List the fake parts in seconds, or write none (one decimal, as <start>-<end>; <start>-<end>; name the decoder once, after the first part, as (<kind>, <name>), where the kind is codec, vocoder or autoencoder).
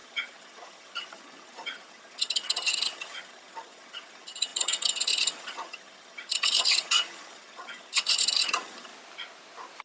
0.0-8.9 (vocoder, HiFi-GAN)